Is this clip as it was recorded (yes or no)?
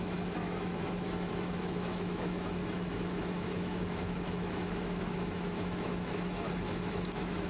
no